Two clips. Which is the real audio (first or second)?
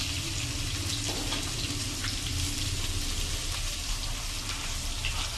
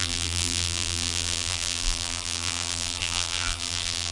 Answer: first